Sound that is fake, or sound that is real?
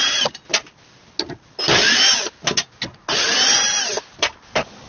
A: real